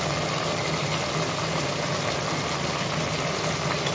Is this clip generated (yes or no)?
no